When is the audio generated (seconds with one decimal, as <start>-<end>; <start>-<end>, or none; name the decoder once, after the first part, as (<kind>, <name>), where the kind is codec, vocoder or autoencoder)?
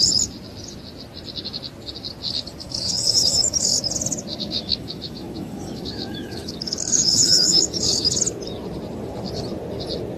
2.6-3.8 (autoencoder, DAC-VAE); 4.3-8.2